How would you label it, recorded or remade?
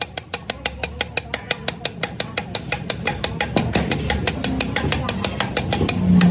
recorded